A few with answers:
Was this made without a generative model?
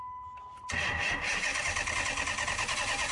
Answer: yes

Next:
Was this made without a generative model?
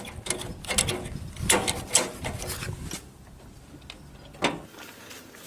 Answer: yes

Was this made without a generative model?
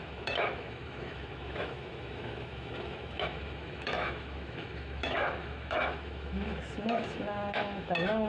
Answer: no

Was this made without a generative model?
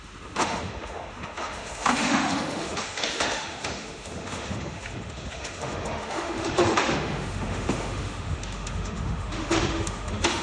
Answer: no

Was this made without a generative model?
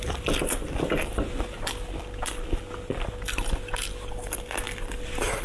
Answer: yes